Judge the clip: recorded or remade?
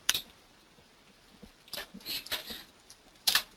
remade